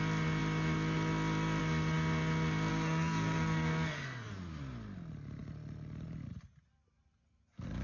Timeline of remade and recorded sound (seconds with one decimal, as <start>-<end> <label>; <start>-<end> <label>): 0.0-2.7 recorded; 2.7-4.3 remade; 4.3-7.8 recorded